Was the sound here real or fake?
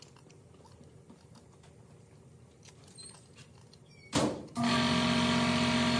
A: real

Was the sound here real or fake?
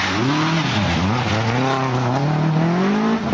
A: real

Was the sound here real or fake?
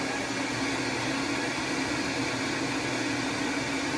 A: real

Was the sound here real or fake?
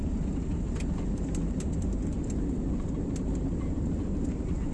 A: fake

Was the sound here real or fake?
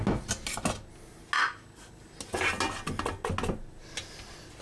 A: real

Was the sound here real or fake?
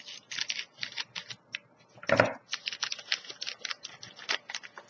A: real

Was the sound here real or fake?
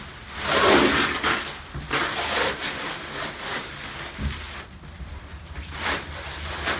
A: fake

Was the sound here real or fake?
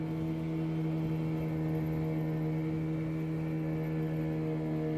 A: real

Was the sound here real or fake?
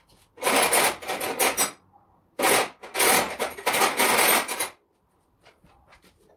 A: real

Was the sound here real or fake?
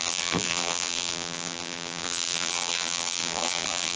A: fake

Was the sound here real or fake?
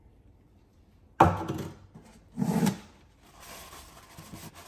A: real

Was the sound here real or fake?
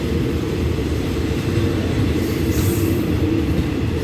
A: fake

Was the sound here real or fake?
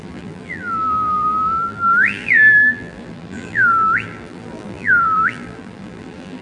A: fake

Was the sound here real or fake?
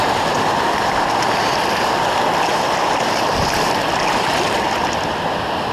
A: real